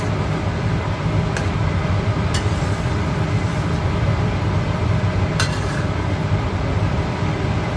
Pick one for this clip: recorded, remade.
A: remade